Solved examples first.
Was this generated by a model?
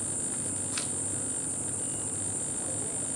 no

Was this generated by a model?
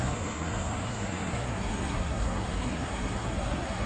yes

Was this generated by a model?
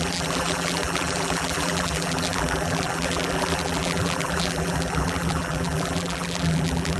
yes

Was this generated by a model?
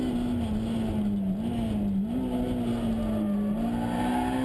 no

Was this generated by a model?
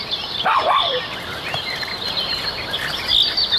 no